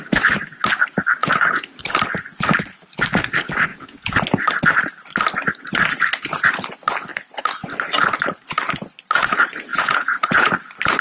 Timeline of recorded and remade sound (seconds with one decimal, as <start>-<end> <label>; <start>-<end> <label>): 0.0-1.2 recorded; 1.2-1.8 remade; 1.8-3.7 recorded; 3.7-4.2 remade; 4.2-9.7 recorded; 9.7-10.5 remade; 10.5-11.0 recorded